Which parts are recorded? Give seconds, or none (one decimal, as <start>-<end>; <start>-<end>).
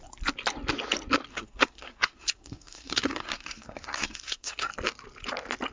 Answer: 0.0-1.3; 4.7-5.7